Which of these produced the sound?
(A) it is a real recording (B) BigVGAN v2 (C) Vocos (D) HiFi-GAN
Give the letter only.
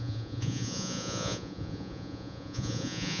C